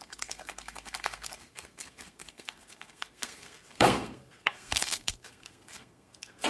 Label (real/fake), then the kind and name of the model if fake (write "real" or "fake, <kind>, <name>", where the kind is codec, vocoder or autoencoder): fake, codec, SNAC